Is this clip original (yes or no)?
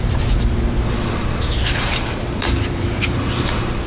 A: no